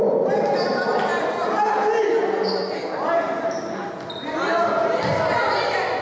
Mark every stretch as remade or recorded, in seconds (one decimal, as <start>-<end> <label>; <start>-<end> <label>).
0.0-6.0 recorded